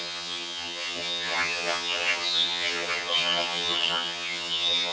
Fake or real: fake